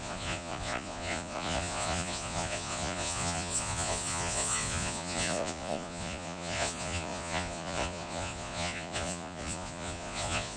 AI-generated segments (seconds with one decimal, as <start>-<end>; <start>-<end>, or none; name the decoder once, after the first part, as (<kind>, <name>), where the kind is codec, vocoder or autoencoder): 0.0-10.6 (vocoder, Vocos)